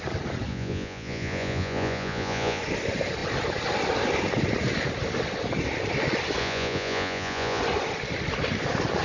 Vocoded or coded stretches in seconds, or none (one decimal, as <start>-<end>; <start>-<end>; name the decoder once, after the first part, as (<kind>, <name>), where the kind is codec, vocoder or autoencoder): 0.5-2.6 (vocoder, Vocos); 6.4-7.6